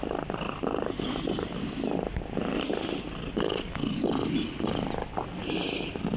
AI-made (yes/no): no